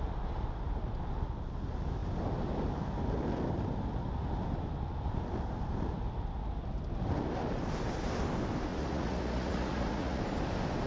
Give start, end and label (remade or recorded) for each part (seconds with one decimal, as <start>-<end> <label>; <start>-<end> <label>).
0.0-8.7 recorded; 8.7-10.2 remade; 10.2-10.9 recorded